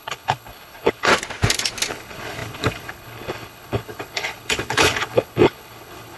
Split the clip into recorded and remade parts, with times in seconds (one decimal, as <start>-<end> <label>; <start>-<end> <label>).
0.0-1.1 remade; 1.1-1.9 recorded; 1.9-6.2 remade